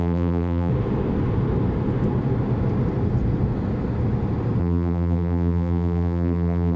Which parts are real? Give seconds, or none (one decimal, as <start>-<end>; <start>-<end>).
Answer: 0.7-4.6